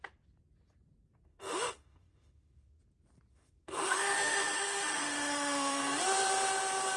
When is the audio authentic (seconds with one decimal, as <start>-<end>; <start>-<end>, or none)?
0.0-1.3; 2.8-3.3; 5.8-7.0